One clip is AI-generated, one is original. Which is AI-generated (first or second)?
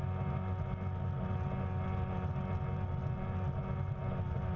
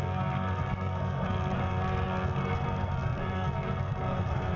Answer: second